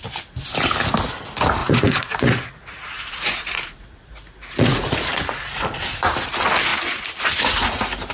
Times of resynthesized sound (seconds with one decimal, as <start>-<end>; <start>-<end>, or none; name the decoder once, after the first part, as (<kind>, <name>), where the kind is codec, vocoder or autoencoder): 1.6-5.6 (vocoder, Vocos)